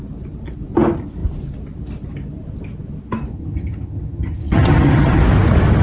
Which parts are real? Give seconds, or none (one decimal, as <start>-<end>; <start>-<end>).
0.0-3.3; 5.2-5.8